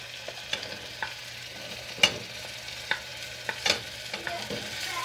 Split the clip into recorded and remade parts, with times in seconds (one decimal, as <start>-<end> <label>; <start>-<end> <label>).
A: 0.0-1.2 recorded; 1.2-1.9 remade; 1.9-5.0 recorded